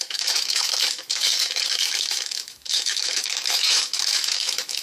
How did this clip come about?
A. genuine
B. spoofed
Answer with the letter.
B